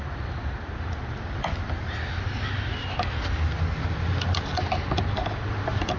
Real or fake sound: real